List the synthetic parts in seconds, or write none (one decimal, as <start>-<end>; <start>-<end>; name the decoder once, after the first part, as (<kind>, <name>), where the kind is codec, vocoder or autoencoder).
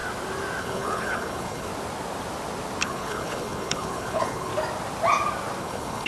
0.6-1.7 (codec, HILCodec); 2.8-4.5; 5.6-6.1